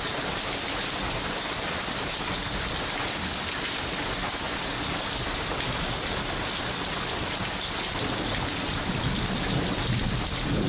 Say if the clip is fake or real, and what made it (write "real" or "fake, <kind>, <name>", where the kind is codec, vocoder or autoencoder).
real